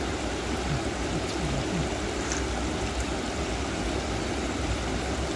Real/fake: real